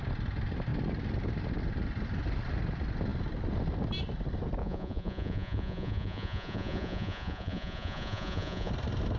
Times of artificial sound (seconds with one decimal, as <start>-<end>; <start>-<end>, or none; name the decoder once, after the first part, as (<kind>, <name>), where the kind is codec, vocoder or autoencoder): 4.6-8.7 (vocoder, Vocos)